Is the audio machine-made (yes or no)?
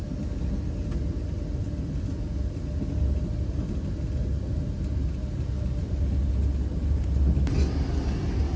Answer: no